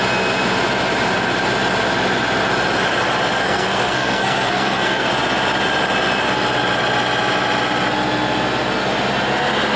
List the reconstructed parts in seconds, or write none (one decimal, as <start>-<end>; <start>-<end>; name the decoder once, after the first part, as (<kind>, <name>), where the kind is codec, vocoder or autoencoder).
3.4-5.1 (codec, SNAC)